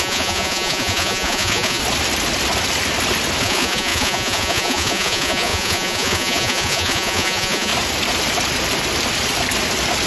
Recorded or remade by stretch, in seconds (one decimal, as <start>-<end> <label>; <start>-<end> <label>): 0.0-1.8 remade; 1.8-3.4 recorded; 3.4-7.7 remade; 7.7-10.1 recorded